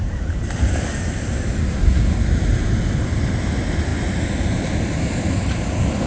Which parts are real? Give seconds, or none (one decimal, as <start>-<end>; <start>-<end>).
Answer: 0.0-1.6; 2.2-6.1